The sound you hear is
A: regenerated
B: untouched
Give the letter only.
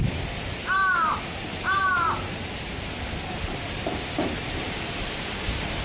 B